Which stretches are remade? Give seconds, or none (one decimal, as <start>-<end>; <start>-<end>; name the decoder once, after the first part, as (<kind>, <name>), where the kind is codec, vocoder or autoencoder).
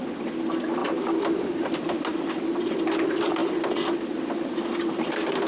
none